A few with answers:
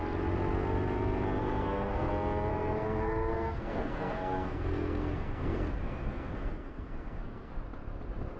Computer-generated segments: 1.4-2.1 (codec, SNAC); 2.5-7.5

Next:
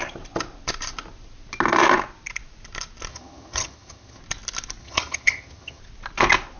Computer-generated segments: 3.1-4.2 (vocoder, HiFi-GAN); 4.8-5.8

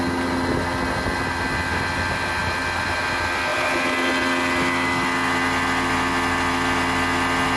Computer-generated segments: none

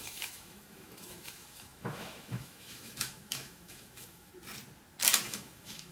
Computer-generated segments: 0.0-4.3 (autoencoder, DAC-VAE); 5.3-5.9